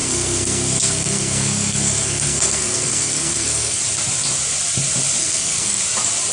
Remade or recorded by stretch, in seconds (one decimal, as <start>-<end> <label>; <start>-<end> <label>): 0.0-3.8 remade; 3.8-5.2 recorded; 5.2-5.8 remade; 5.8-6.3 recorded